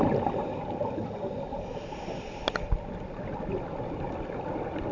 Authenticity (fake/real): real